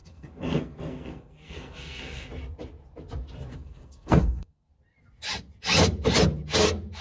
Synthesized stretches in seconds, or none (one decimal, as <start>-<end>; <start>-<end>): 0.0-2.3; 3.5-4.7